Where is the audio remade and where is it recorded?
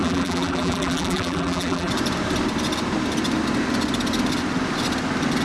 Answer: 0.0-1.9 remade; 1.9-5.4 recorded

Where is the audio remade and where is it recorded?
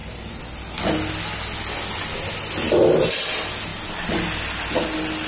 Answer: 0.0-3.7 recorded; 3.7-4.8 remade; 4.8-5.3 recorded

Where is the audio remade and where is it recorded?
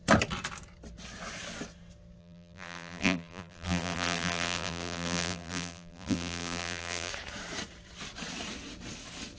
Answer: 0.0-2.2 recorded; 2.2-7.1 remade; 7.1-9.4 recorded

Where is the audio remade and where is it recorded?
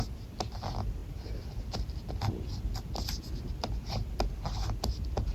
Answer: 0.0-5.3 recorded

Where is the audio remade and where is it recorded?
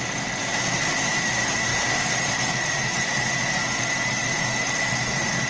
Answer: 0.0-5.5 remade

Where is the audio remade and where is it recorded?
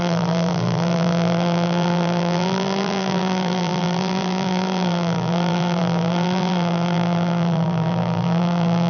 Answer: 0.0-8.9 remade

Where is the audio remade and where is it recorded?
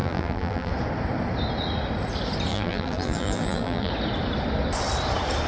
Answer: 0.0-0.7 remade; 0.7-2.5 recorded; 2.5-3.9 remade; 3.9-5.5 recorded